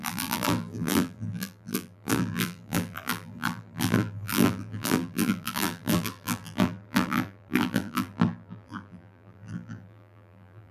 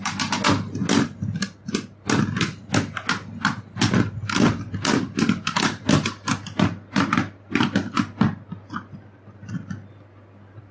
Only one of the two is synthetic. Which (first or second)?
first